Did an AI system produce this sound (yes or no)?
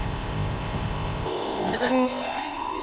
yes